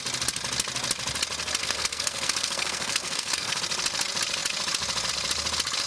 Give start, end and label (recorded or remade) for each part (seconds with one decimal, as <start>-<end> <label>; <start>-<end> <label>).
0.0-1.6 recorded; 1.6-3.6 remade; 3.6-5.9 recorded